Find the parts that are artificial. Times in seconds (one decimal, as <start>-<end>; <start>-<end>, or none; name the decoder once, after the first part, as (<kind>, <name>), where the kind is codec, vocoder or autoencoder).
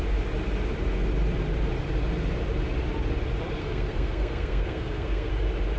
3.6-5.3 (codec, SNAC)